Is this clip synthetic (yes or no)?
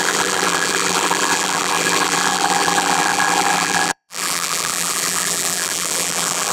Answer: yes